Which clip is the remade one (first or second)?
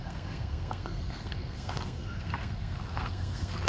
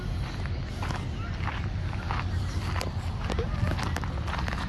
first